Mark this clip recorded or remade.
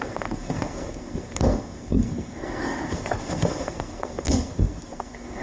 remade